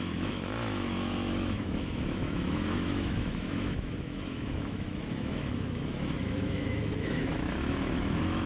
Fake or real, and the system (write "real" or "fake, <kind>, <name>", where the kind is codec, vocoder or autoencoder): fake, autoencoder, DAC-VAE